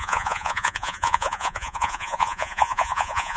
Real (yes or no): no